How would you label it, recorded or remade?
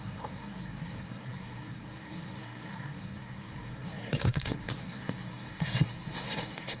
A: remade